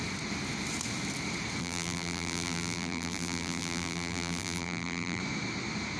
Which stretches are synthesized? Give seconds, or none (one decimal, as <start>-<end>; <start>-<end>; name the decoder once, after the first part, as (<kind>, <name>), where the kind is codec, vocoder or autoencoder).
1.6-5.2 (vocoder, BigVGAN v2)